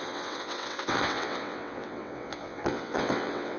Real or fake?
fake